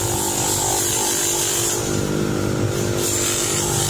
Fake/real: real